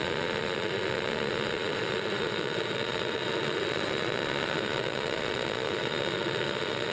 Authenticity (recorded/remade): remade